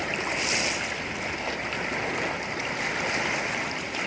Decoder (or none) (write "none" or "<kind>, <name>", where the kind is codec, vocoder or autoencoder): none